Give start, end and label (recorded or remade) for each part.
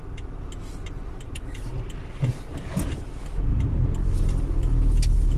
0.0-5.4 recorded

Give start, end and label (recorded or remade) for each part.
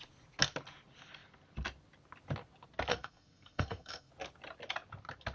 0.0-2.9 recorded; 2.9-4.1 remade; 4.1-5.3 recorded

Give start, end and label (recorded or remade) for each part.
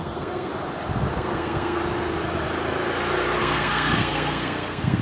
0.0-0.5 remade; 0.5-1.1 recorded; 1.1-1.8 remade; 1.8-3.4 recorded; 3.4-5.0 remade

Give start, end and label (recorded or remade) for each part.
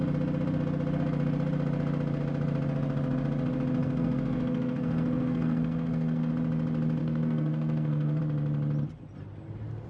0.0-3.8 recorded; 3.8-6.3 remade; 6.3-7.0 recorded; 7.0-8.2 remade; 8.2-9.9 recorded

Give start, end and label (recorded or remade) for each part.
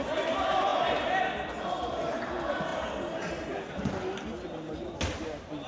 0.0-5.7 recorded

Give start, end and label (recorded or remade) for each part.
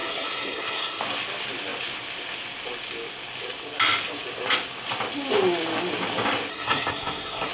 0.0-1.0 remade; 1.0-6.5 recorded; 6.5-7.5 remade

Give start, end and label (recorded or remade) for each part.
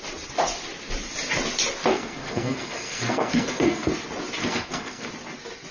0.0-1.9 recorded; 1.9-3.9 remade; 3.9-4.4 recorded; 4.4-5.1 remade; 5.1-5.7 recorded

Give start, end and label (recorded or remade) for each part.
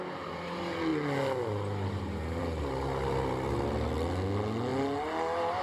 0.0-5.6 recorded